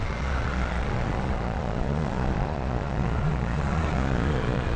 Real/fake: fake